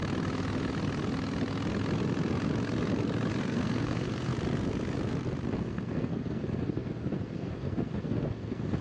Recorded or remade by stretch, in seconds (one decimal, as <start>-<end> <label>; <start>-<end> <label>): 0.0-3.4 recorded; 3.4-4.3 remade; 4.3-5.6 recorded; 5.6-8.8 remade